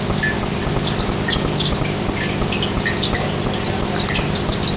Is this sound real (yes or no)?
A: yes